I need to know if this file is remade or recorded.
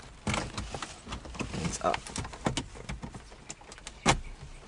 recorded